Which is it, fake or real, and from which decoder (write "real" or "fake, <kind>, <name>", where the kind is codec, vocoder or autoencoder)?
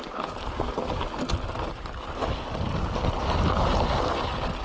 real